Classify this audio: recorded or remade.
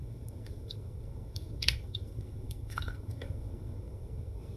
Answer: remade